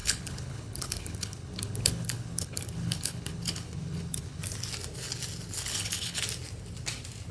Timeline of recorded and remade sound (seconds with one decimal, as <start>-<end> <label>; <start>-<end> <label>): 0.0-4.4 remade; 4.4-5.7 recorded; 5.7-6.2 remade; 6.2-7.3 recorded